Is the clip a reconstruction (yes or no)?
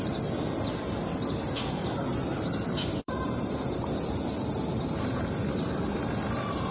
yes